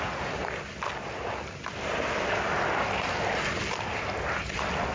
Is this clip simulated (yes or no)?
no